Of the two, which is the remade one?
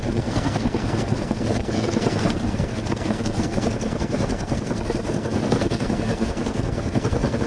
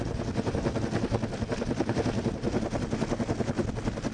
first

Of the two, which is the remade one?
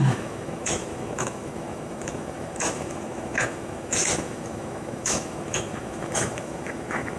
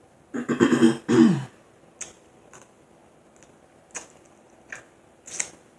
first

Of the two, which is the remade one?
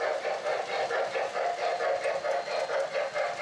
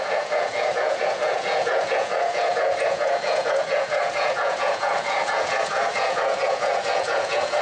second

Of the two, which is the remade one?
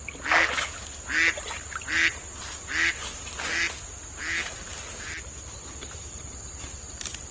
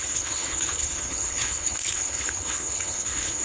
second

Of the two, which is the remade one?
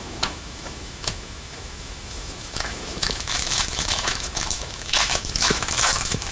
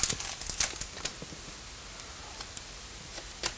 first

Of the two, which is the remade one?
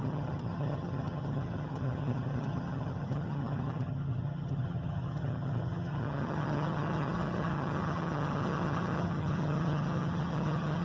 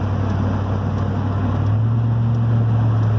first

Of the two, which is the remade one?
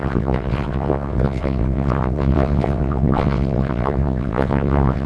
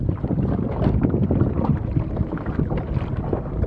first